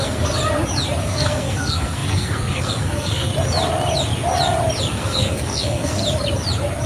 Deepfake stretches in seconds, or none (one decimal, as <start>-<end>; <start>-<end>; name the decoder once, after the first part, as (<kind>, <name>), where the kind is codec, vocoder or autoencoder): 0.0-0.4 (codec, SNAC); 1.0-3.3; 4.9-6.0